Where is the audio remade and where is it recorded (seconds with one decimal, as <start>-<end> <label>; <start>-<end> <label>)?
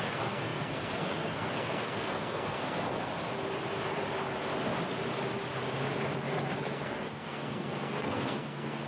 0.0-3.1 remade; 3.1-6.6 recorded; 6.6-8.9 remade